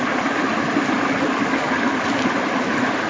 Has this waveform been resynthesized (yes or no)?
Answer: no